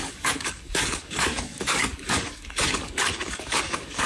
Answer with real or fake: fake